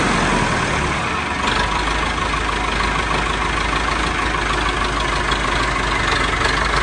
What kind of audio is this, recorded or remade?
recorded